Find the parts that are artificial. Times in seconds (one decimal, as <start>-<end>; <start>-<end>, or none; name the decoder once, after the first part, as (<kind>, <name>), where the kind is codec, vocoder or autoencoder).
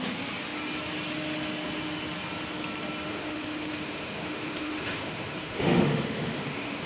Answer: 3.1-6.9 (autoencoder, DAC-VAE)